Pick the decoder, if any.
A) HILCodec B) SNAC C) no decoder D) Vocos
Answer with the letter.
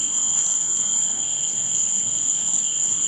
B